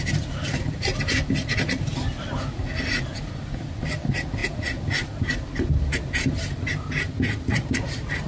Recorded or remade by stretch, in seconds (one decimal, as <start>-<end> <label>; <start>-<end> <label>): 0.0-8.3 recorded